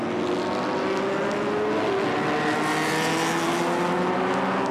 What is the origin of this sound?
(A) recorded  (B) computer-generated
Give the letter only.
A